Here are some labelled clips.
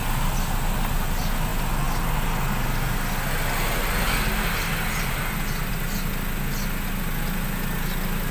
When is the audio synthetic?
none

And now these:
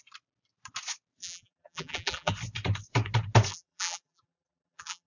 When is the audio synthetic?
1.2-2.3 (vocoder, BigVGAN v2); 3.5-5.1

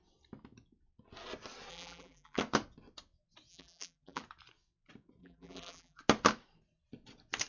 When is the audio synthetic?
1.7-2.4 (vocoder, BigVGAN v2); 3.5-4.2; 5.2-6.0

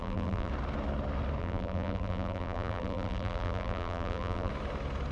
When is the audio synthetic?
0.0-0.5 (vocoder, BigVGAN v2); 1.4-4.5

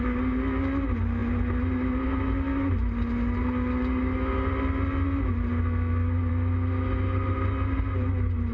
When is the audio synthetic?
none

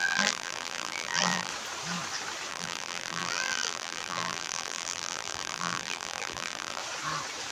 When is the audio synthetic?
0.0-1.5 (vocoder, BigVGAN v2); 2.5-6.8

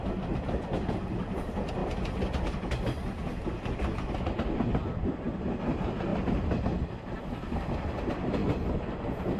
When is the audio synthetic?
none